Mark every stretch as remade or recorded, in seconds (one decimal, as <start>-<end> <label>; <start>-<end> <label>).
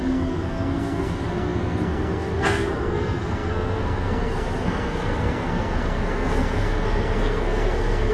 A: 0.0-8.1 remade